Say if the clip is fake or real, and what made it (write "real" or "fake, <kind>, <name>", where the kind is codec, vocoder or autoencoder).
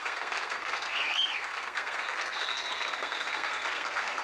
fake, codec, SNAC